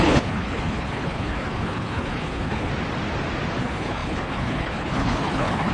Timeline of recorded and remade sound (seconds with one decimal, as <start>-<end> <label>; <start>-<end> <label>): 0.0-2.7 remade; 2.7-3.6 recorded; 3.6-5.7 remade